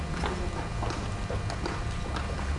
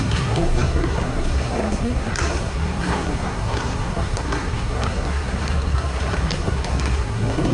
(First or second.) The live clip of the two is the first